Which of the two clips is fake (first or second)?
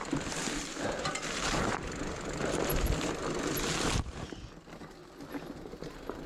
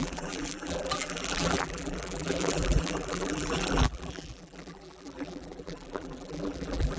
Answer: second